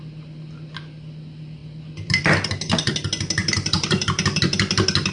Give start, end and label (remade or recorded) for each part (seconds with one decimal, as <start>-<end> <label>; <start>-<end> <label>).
0.0-1.6 recorded; 1.6-2.5 remade; 2.5-3.4 recorded; 3.4-4.4 remade; 4.4-5.1 recorded